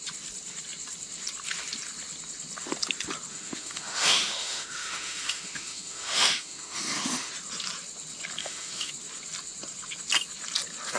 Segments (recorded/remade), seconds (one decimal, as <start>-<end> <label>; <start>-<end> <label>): 0.0-3.3 recorded; 3.3-7.3 remade; 7.3-8.4 recorded; 8.4-8.9 remade; 8.9-11.0 recorded